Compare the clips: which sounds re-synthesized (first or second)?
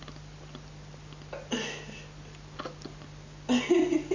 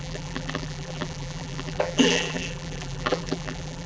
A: second